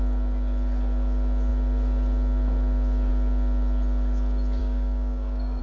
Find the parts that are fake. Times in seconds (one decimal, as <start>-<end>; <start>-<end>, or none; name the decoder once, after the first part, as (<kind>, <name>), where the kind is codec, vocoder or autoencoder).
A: 4.6-5.6 (codec, DAC)